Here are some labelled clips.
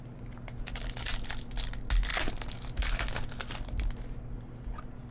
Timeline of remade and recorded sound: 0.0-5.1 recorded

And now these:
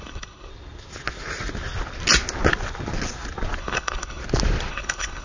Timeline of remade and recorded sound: 0.0-0.5 remade; 0.5-3.6 recorded; 3.6-4.2 remade; 4.2-4.7 recorded; 4.7-5.2 remade

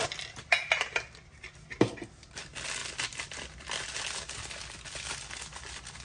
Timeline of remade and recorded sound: 0.0-6.0 recorded

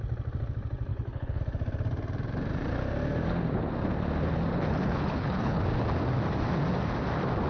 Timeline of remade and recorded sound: 0.0-0.9 recorded; 0.9-1.4 remade; 1.4-4.5 recorded; 4.5-5.6 remade; 5.6-7.5 recorded